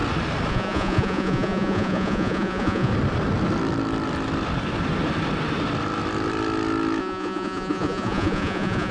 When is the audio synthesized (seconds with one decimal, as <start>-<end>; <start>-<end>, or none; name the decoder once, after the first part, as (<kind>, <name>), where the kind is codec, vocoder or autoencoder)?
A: 0.5-2.9 (vocoder, Vocos); 7.0-8.9